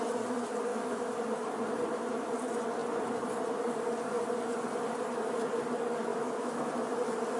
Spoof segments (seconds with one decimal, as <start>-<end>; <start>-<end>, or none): 0.7-1.2; 6.1-6.7